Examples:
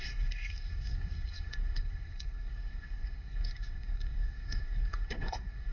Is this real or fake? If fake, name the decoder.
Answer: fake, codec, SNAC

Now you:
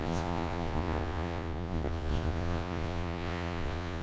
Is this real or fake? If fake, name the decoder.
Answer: fake, vocoder, Vocos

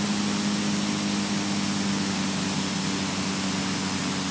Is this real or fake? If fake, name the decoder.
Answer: real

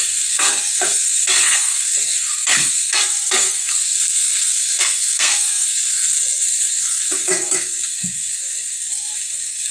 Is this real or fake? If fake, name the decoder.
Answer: fake, codec, SNAC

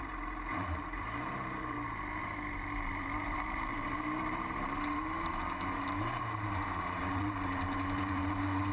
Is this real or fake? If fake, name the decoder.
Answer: fake, vocoder, BigVGAN v2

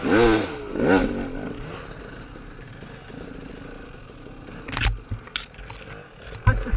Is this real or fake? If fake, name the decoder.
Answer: real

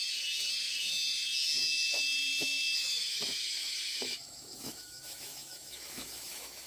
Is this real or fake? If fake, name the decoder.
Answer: fake, autoencoder, DAC-VAE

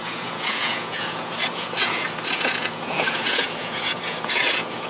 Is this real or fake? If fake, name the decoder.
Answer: fake, vocoder, Vocos